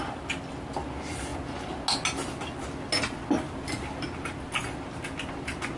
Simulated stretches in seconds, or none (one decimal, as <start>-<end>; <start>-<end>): none